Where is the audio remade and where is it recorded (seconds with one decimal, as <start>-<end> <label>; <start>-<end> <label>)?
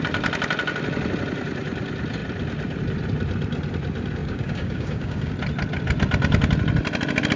0.0-4.2 recorded; 4.2-5.3 remade; 5.3-7.4 recorded